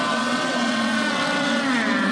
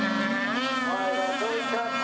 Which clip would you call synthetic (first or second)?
first